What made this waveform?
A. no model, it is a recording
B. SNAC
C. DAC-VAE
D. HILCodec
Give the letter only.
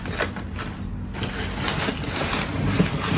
A